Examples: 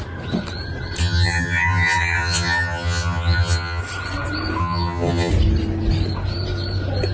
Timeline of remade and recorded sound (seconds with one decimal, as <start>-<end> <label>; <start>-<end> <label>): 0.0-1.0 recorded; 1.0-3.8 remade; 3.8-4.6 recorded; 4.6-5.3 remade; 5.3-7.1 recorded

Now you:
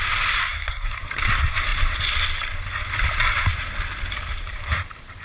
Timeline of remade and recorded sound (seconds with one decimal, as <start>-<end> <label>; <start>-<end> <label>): 0.0-0.4 recorded; 0.4-1.0 remade; 1.0-5.2 recorded

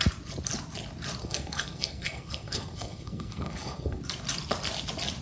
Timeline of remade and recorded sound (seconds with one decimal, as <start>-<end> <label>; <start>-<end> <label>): 0.0-1.2 recorded; 1.2-4.0 remade; 4.0-5.2 recorded

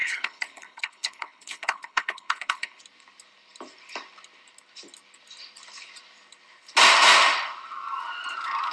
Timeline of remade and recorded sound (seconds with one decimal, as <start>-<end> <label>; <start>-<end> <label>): 0.0-2.8 remade; 2.8-8.7 recorded

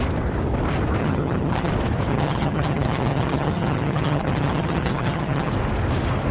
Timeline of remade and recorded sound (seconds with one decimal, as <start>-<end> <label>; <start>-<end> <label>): 0.0-1.0 recorded; 1.0-1.7 remade; 1.7-2.1 recorded; 2.1-5.5 remade; 5.5-6.3 recorded

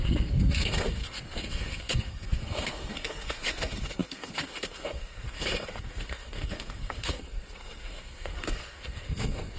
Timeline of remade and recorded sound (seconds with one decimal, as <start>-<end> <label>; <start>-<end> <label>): 0.0-9.6 remade

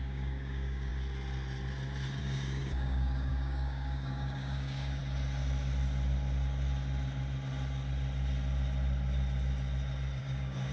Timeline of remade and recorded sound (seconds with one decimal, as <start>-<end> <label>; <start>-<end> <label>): 0.0-0.9 remade; 0.9-2.2 recorded; 2.2-5.0 remade; 5.0-10.2 recorded; 10.2-10.7 remade

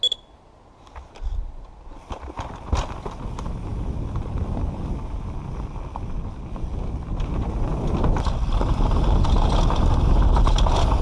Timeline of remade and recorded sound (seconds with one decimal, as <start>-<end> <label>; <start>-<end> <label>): 0.0-11.0 recorded